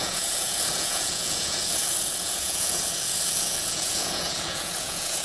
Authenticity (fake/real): fake